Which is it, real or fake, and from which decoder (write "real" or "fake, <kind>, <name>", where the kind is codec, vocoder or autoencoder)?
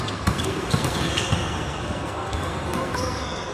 fake, codec, SNAC